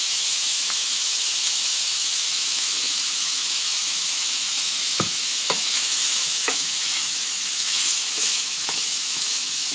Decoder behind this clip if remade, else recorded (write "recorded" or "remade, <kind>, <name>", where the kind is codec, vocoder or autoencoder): remade, autoencoder, DAC-VAE